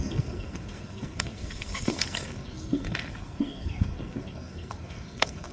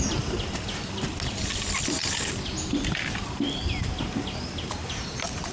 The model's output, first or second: first